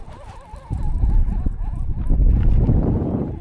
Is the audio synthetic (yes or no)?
yes